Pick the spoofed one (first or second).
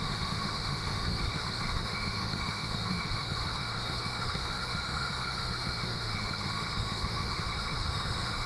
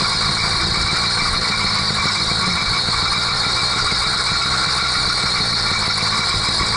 first